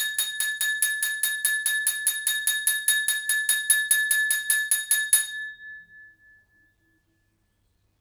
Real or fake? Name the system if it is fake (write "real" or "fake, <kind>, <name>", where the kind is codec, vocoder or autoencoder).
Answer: real